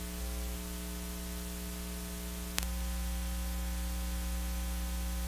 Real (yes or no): yes